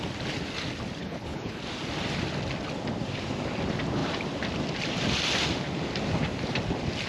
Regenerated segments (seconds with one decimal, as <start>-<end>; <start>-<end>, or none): 1.0-1.6